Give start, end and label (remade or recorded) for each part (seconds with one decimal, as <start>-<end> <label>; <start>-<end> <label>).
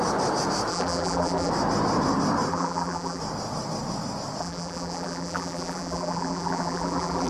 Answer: 0.0-0.7 recorded; 0.7-1.5 remade; 1.5-2.5 recorded; 2.5-3.2 remade; 3.2-4.4 recorded; 4.4-7.3 remade